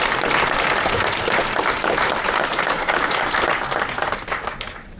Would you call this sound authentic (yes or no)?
yes